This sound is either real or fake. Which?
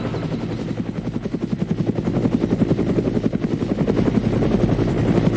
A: real